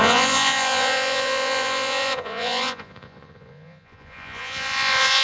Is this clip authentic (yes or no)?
no